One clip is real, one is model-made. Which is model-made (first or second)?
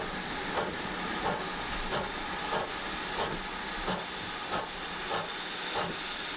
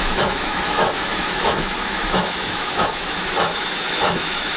second